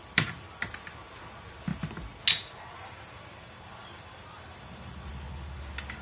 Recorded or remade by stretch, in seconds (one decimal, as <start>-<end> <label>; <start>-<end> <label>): 0.0-3.8 recorded; 3.8-5.1 remade; 5.1-6.0 recorded